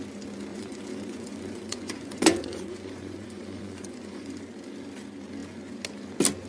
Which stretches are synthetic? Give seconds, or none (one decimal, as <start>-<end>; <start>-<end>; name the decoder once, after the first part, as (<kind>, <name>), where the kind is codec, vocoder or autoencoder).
0.5-4.4 (vocoder, Vocos)